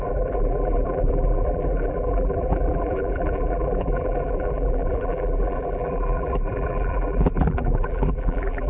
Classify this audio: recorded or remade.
remade